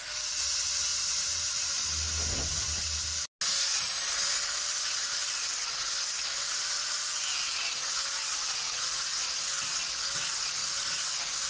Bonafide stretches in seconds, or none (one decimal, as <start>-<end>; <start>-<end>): 0.0-11.5